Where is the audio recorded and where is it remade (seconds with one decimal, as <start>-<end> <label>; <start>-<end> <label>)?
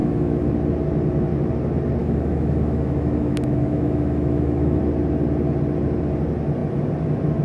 0.0-0.5 remade; 0.5-2.0 recorded; 2.0-4.8 remade; 4.8-7.4 recorded